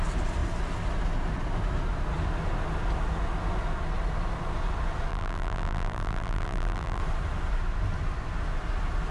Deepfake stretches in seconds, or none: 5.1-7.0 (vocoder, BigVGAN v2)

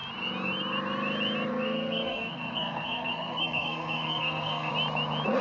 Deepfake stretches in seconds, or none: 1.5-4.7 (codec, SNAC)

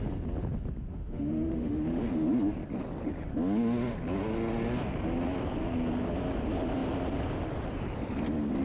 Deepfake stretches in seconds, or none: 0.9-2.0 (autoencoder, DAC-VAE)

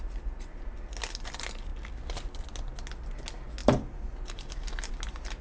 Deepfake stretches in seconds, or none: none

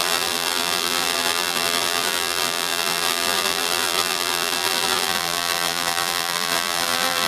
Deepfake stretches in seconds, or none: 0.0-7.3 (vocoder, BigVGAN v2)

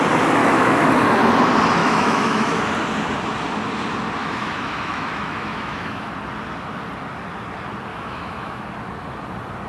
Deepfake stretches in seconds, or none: 0.4-0.9 (autoencoder, DAC-VAE); 1.8-2.6; 4.2-6.1; 7.9-8.6